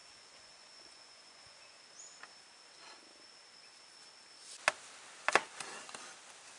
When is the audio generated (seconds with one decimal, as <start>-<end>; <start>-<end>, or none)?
0.0-1.8